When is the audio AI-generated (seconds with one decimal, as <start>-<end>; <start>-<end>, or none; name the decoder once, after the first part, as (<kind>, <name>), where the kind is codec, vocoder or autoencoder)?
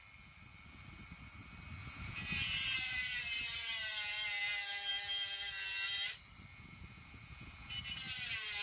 1.8-3.2 (vocoder, Vocos); 6.5-7.8